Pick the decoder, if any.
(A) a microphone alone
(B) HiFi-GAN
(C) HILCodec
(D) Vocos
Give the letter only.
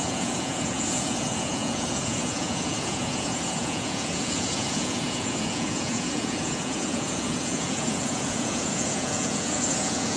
D